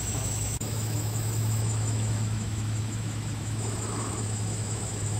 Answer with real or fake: fake